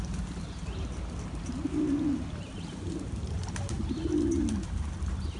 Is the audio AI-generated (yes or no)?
no